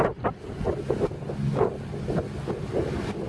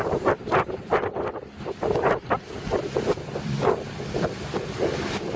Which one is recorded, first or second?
first